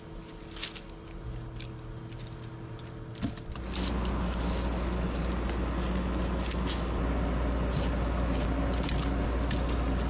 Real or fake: real